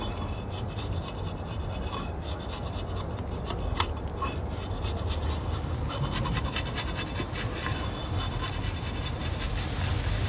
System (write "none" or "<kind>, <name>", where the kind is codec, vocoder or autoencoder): none